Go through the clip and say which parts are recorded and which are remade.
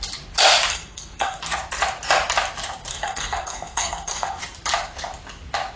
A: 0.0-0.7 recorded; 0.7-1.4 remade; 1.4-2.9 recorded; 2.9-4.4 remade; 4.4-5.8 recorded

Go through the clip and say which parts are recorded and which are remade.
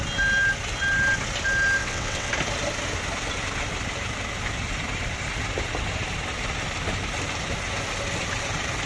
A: 0.0-1.8 recorded; 1.8-2.3 remade; 2.3-8.9 recorded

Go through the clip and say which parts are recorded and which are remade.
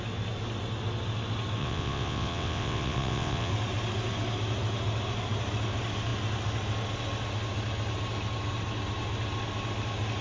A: 0.0-1.6 recorded; 1.6-3.5 remade; 3.5-10.2 recorded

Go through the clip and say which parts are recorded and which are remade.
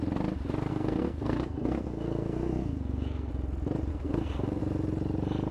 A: 0.0-0.7 recorded; 0.7-3.3 remade; 3.3-3.9 recorded; 3.9-4.6 remade; 4.6-5.5 recorded